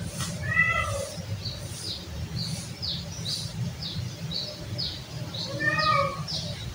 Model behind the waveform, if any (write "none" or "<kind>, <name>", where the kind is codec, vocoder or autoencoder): none